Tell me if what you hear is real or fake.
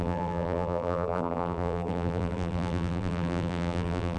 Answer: fake